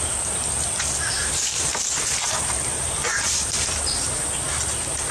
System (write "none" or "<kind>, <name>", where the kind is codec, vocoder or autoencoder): none